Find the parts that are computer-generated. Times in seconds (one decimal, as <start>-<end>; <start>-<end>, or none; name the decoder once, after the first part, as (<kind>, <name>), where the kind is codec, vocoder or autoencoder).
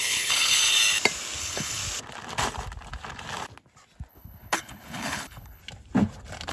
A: 0.0-0.6 (codec, HILCodec); 1.4-1.8; 4.1-5.6